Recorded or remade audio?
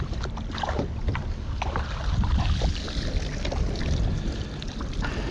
recorded